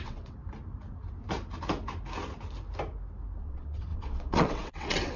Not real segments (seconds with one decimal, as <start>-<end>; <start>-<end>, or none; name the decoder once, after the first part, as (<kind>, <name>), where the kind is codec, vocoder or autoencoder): 0.0-0.4 (vocoder, WaveNeXt); 3.4-5.2